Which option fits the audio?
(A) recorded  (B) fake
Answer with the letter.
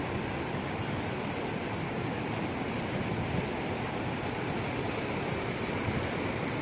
A